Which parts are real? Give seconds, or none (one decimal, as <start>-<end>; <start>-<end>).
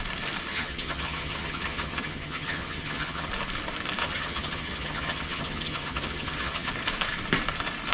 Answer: 0.0-0.5; 3.3-4.0; 6.7-7.9